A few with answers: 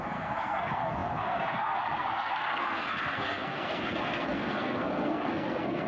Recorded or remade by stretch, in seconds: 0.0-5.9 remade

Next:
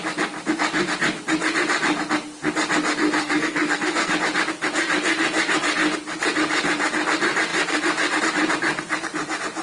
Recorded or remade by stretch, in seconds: 0.0-3.2 recorded; 3.2-4.1 remade; 4.1-9.6 recorded

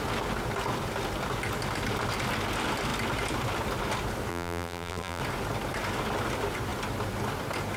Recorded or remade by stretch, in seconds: 0.0-4.3 recorded; 4.3-5.2 remade; 5.2-7.8 recorded

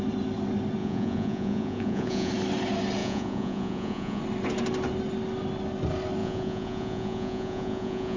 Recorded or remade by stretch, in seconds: 0.0-0.8 recorded; 0.8-2.3 remade; 2.3-3.0 recorded; 3.0-4.2 remade; 4.2-6.2 recorded; 6.2-8.2 remade

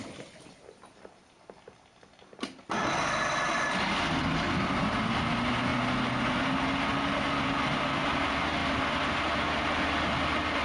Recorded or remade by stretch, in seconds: 0.0-10.6 recorded